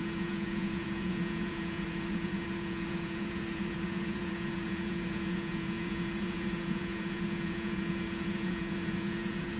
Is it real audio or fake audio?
fake